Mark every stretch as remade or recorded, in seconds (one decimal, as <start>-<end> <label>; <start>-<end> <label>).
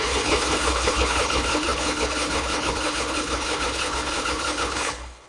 0.0-5.3 remade